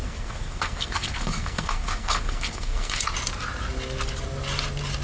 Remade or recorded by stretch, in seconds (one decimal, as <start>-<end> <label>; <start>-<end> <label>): 0.0-3.0 remade; 3.0-5.0 recorded